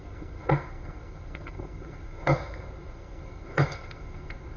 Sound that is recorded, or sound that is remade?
remade